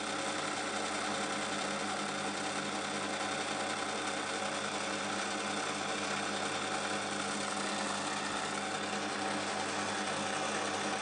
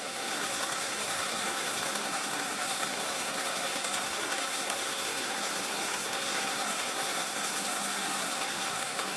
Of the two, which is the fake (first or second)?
second